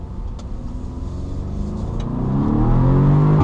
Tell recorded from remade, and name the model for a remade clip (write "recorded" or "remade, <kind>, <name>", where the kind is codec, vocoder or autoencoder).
recorded